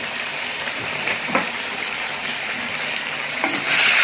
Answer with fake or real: fake